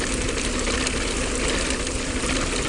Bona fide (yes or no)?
yes